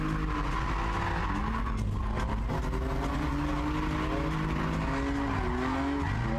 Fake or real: real